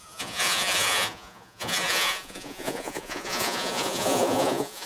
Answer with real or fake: fake